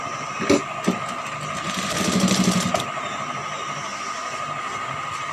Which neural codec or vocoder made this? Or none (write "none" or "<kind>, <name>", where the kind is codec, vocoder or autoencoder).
none